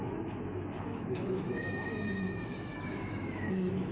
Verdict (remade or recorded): remade